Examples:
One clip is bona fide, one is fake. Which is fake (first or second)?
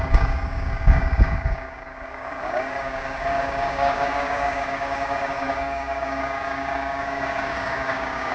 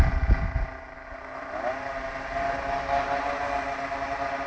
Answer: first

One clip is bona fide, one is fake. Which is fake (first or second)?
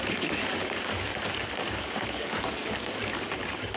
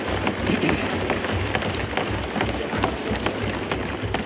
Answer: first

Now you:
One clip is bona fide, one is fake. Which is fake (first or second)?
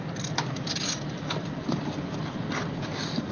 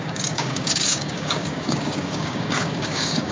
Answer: second